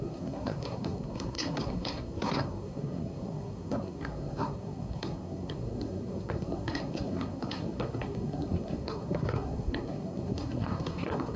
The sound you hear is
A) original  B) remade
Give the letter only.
B